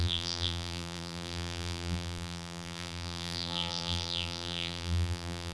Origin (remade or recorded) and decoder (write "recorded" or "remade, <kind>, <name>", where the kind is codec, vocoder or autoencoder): remade, vocoder, BigVGAN v2